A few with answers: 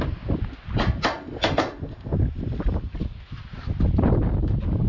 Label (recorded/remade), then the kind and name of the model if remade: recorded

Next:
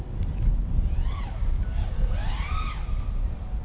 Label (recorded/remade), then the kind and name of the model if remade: recorded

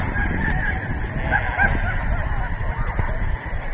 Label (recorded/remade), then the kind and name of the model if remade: recorded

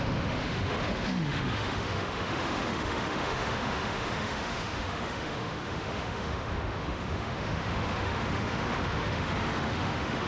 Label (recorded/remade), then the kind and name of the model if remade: remade, autoencoder, DAC-VAE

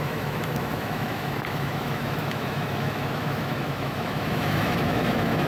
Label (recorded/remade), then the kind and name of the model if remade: remade, autoencoder, DAC-VAE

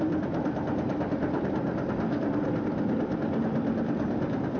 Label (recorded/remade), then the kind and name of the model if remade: recorded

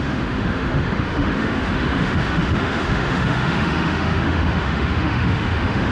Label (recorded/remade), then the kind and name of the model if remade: remade, autoencoder, DAC-VAE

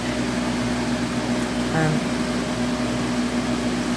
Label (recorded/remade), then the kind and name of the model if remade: recorded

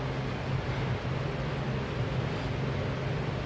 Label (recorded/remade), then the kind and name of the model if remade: recorded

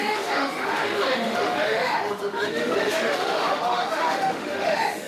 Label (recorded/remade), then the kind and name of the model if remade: remade, autoencoder, DAC-VAE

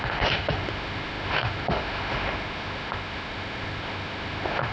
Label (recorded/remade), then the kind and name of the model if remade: remade, autoencoder, DAC-VAE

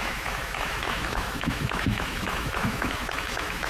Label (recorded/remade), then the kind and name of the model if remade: remade, autoencoder, DAC-VAE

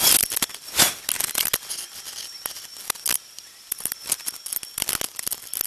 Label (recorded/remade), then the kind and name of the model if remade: recorded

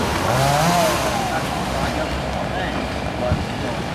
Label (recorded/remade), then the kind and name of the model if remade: recorded